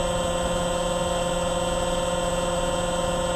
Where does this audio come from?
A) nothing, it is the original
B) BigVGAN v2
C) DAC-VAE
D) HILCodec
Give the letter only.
A